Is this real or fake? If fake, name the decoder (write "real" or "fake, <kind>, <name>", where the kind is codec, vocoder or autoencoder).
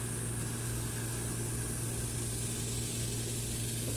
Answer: real